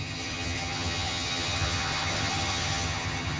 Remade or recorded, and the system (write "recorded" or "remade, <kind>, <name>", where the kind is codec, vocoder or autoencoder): remade, vocoder, HiFi-GAN